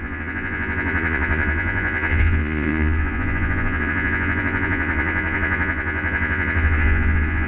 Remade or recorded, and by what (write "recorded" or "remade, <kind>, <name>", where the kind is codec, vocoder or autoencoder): remade, vocoder, Vocos